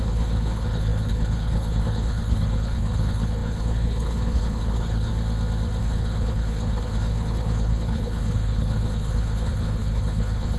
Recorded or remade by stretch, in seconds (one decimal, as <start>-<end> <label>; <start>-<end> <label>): 0.0-5.1 remade; 5.1-5.8 recorded; 5.8-10.6 remade